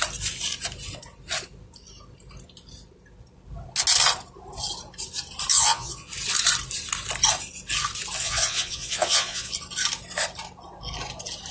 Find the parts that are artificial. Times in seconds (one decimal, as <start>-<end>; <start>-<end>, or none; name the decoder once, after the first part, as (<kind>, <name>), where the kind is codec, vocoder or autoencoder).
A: 5.5-6.1 (vocoder, Vocos); 8.2-9.5